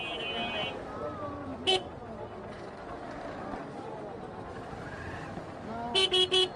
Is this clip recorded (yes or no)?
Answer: yes